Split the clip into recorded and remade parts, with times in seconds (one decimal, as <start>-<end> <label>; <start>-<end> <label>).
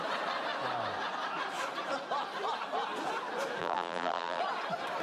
0.0-3.6 recorded; 3.6-4.4 remade; 4.4-5.0 recorded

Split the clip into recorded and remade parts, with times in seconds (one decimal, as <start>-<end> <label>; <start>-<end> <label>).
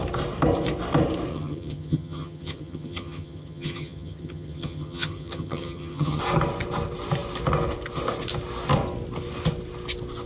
0.0-1.3 recorded; 1.3-6.2 remade; 6.2-10.3 recorded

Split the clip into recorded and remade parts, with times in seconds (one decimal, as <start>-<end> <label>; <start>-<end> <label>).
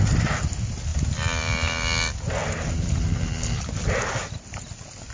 0.0-5.1 recorded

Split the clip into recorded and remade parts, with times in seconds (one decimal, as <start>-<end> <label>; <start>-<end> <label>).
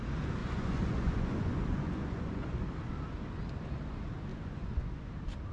0.0-0.4 recorded; 0.4-2.6 remade; 2.6-4.3 recorded; 4.3-5.1 remade; 5.1-5.5 recorded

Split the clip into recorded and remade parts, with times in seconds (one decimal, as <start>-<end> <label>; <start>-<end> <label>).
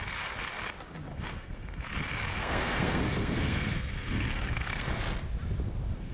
0.0-1.1 recorded; 1.1-1.9 remade; 1.9-2.4 recorded; 2.4-5.0 remade; 5.0-6.1 recorded